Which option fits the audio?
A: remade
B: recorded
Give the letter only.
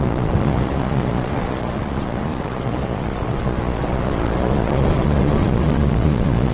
A